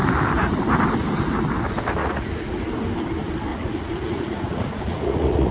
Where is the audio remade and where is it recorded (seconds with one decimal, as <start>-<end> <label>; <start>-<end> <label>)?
0.0-2.0 recorded; 2.0-2.6 remade; 2.6-3.5 recorded; 3.5-5.5 remade